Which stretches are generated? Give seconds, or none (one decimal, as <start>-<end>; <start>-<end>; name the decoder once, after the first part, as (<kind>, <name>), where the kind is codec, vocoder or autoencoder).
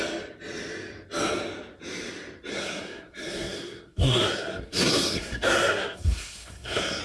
2.5-7.0 (codec, SNAC)